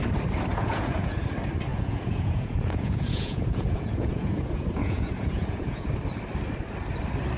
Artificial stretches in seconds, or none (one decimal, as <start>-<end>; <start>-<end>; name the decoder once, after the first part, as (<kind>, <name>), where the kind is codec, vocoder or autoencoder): 0.5-1.2 (vocoder, Vocos); 1.7-5.9